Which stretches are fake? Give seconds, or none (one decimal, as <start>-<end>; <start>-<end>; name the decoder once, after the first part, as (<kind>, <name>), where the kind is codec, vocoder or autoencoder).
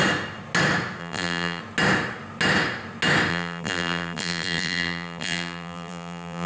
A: 1.0-1.6 (vocoder, BigVGAN v2); 3.3-6.5